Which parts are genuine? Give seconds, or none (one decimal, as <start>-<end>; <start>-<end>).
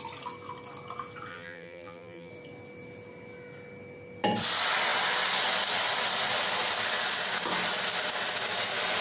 0.0-1.3; 2.3-9.0